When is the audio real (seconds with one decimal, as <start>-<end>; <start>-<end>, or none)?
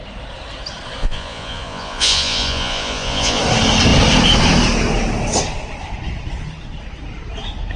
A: 0.0-1.0; 3.4-7.8